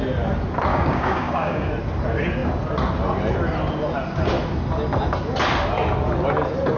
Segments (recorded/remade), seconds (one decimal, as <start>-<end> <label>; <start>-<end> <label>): 0.0-0.7 recorded; 0.7-1.7 remade; 1.7-6.8 recorded